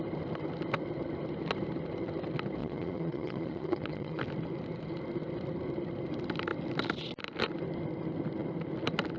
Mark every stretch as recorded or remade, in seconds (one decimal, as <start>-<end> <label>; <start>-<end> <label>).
0.0-2.6 recorded; 2.6-4.2 remade; 4.2-9.2 recorded